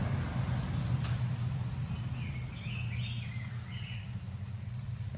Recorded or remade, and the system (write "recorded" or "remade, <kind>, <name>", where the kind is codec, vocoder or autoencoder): recorded